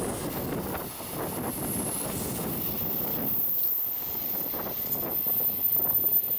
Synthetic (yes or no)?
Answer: no